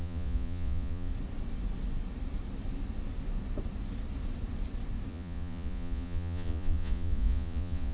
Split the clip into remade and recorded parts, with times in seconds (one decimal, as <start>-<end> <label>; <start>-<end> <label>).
0.0-1.1 remade; 1.1-5.1 recorded; 5.1-7.9 remade